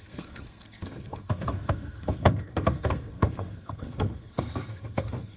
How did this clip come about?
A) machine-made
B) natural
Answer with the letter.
A